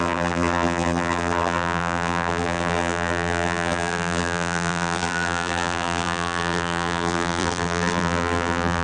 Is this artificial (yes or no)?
yes